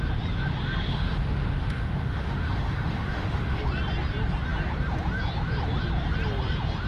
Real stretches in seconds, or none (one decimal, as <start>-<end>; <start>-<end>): 0.0-0.9; 3.6-6.9